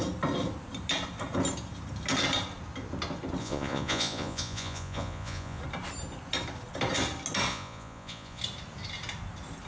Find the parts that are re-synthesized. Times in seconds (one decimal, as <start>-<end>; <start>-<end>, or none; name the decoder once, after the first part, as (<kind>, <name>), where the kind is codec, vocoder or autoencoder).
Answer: 3.4-5.6 (vocoder, Vocos); 7.5-8.4

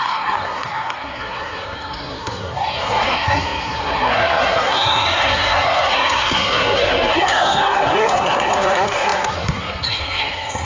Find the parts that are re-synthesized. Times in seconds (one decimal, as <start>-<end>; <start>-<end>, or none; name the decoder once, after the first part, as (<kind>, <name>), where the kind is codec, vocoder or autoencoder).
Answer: 0.0-10.7 (codec, SNAC)

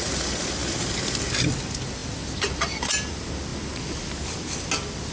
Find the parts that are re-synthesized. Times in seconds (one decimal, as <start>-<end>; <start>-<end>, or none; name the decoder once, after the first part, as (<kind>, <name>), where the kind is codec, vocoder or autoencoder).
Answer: none